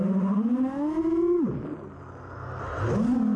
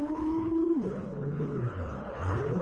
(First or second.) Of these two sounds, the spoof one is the second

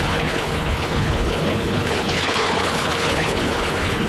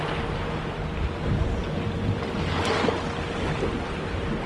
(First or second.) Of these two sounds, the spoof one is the first